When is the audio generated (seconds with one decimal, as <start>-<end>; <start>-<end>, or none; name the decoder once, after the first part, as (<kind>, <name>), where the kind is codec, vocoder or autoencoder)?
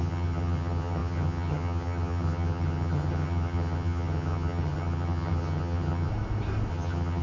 0.0-6.1 (vocoder, HiFi-GAN); 6.7-7.2